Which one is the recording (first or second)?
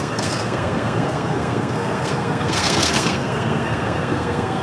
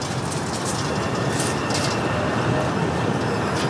second